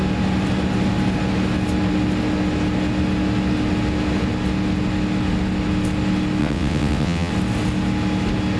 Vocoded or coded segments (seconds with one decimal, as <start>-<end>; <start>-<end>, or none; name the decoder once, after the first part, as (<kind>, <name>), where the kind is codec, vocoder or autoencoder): 6.4-7.3 (vocoder, WaveNeXt)